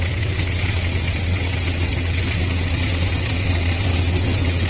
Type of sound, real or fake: fake